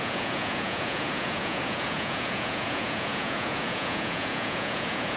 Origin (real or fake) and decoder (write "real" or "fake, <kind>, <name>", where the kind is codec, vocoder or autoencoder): fake, vocoder, Vocos